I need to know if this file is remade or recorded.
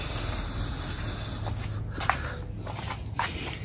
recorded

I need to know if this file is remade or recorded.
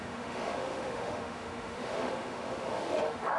remade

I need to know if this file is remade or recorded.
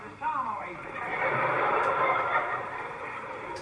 remade